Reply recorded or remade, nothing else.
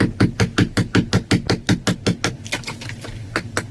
recorded